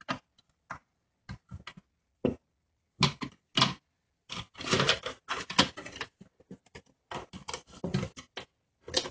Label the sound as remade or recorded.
recorded